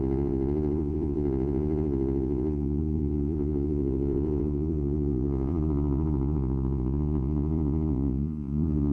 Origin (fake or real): fake